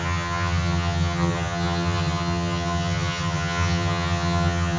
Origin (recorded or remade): remade